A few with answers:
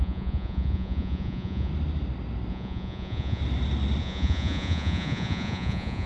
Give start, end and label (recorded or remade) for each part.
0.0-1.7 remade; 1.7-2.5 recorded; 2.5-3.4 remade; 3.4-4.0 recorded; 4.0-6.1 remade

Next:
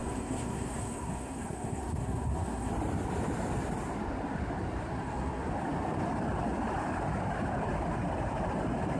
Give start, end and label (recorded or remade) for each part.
0.0-2.7 remade; 2.7-4.9 recorded; 4.9-5.5 remade; 5.5-9.0 recorded

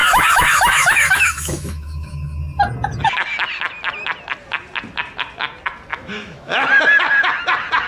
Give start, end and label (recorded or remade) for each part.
0.0-2.4 remade; 2.4-5.9 recorded; 5.9-6.5 remade; 6.5-7.9 recorded

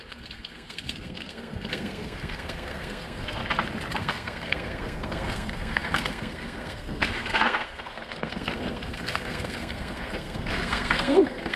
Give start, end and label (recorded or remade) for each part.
0.0-3.4 remade; 3.4-4.0 recorded; 4.0-11.6 remade